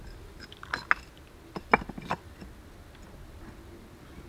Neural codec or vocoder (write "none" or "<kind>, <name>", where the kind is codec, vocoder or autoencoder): none